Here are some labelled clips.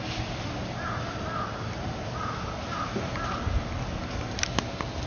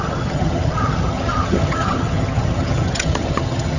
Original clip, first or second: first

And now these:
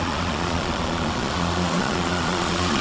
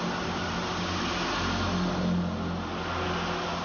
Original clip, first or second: second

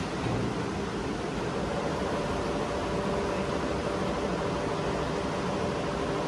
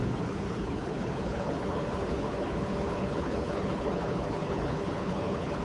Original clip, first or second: first